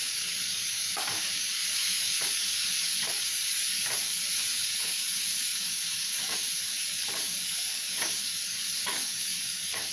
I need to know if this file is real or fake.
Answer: fake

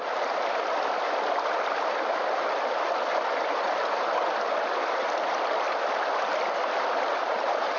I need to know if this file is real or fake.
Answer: real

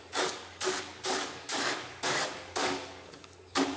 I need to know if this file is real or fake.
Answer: fake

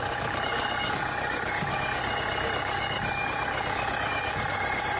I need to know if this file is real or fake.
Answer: fake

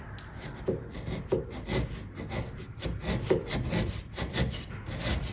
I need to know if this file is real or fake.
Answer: real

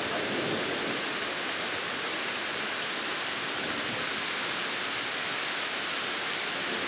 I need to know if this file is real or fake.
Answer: real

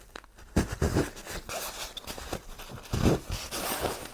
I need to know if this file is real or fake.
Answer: real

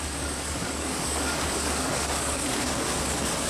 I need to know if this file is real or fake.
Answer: fake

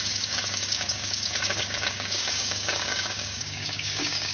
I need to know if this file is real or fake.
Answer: fake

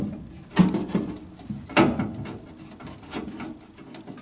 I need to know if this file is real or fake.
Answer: real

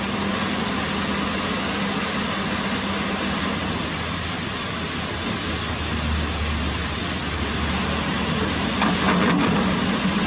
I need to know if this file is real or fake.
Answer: real